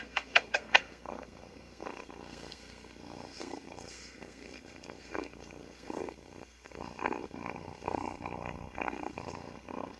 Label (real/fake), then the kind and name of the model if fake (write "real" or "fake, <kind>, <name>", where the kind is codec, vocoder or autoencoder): fake, codec, SNAC